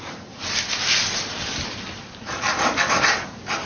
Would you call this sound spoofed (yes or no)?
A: yes